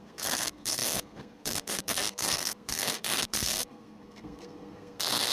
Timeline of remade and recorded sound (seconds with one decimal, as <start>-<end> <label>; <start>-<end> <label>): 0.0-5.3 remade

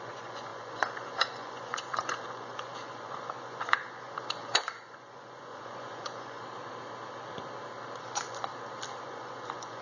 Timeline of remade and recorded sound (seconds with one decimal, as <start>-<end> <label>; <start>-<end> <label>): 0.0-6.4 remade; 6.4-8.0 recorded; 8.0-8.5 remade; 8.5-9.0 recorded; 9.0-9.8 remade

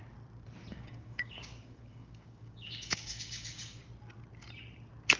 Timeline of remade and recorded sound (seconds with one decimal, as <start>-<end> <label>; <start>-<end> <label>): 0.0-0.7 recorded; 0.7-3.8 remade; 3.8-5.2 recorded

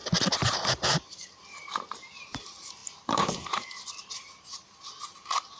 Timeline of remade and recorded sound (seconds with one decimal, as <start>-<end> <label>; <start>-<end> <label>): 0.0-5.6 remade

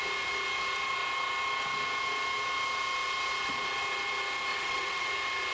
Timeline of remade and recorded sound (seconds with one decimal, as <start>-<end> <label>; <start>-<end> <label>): 0.0-4.5 recorded; 4.5-5.1 remade; 5.1-5.5 recorded

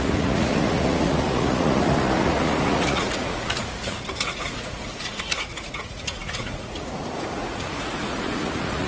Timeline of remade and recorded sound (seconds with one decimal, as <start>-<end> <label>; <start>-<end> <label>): 0.0-8.9 remade

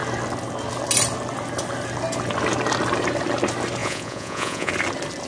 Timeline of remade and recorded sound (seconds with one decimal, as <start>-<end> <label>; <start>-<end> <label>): 0.0-3.8 recorded; 3.8-4.7 remade; 4.7-5.3 recorded